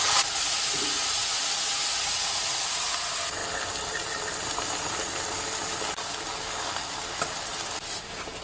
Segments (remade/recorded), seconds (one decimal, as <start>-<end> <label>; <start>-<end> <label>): 0.0-2.7 remade; 2.7-8.4 recorded

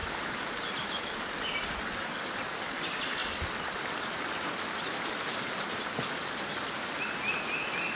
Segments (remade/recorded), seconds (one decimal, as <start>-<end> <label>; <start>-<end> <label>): 0.0-8.0 recorded

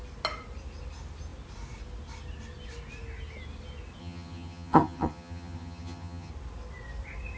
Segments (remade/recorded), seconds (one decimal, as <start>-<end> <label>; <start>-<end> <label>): 0.0-4.0 recorded; 4.0-6.3 remade; 6.3-7.4 recorded

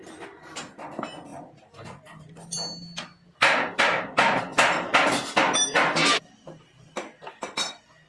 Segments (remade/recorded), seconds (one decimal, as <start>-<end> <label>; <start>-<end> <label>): 0.0-8.1 recorded

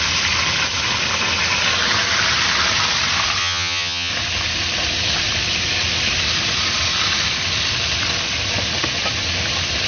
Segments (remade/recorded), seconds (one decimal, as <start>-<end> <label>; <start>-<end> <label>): 0.0-3.4 recorded; 3.4-4.1 remade; 4.1-9.9 recorded

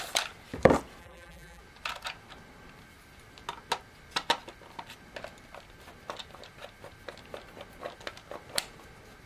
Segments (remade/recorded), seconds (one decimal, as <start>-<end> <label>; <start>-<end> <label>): 0.0-1.0 recorded; 1.0-1.6 remade; 1.6-9.3 recorded